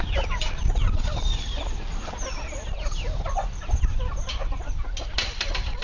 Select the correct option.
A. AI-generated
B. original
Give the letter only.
B